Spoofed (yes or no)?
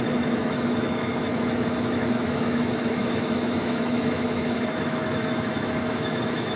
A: yes